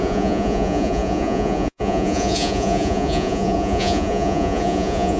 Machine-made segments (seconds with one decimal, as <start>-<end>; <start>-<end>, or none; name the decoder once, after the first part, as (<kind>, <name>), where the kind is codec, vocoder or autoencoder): 0.0-5.2 (vocoder, Vocos)